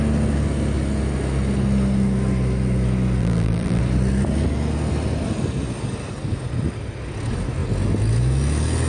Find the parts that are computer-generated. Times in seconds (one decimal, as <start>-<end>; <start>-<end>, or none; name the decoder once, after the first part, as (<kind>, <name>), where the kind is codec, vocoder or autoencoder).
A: 3.2-3.8 (vocoder, BigVGAN v2)